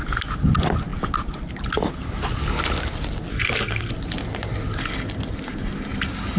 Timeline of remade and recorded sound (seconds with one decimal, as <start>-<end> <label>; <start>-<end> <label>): 0.0-3.3 recorded; 3.3-3.9 remade; 3.9-6.4 recorded